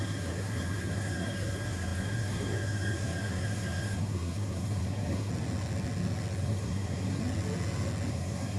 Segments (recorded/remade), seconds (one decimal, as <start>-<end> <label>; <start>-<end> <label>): 0.0-5.3 remade; 5.3-6.4 recorded; 6.4-7.2 remade; 7.2-8.1 recorded; 8.1-8.6 remade